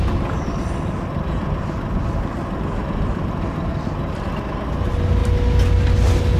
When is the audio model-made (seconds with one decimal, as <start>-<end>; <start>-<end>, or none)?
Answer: none